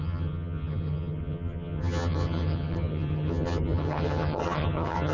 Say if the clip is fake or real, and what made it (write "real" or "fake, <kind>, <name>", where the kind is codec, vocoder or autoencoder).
fake, vocoder, HiFi-GAN